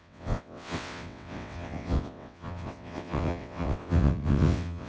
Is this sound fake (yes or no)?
yes